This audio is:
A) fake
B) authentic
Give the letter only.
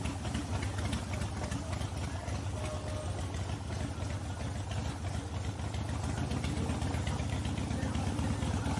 B